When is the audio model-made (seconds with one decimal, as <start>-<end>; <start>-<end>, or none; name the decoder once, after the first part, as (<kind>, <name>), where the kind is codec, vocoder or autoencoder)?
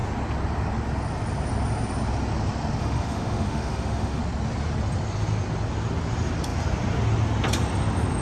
2.8-4.2 (autoencoder, DAC-VAE)